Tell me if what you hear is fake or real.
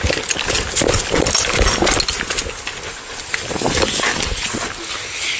real